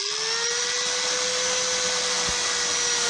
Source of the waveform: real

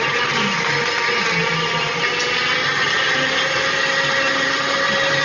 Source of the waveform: real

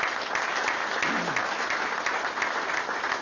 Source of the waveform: real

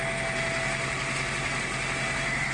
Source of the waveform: real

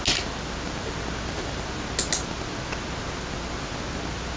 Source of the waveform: real